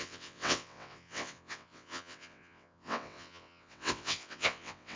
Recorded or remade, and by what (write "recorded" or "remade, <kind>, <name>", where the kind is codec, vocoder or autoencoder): remade, vocoder, WaveNeXt